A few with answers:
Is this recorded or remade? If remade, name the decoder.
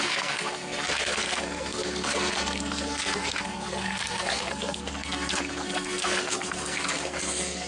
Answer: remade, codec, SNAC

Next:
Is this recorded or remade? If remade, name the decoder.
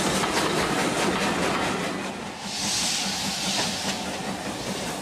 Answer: recorded